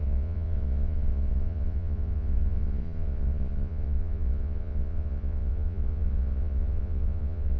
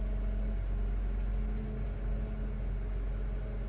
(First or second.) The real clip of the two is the second